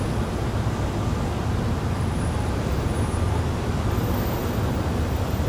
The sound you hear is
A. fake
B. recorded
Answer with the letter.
B